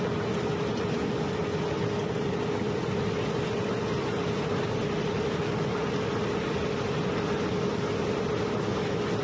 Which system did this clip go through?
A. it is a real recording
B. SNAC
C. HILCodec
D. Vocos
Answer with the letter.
A